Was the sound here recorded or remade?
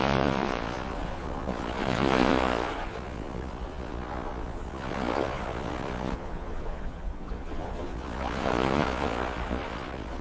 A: remade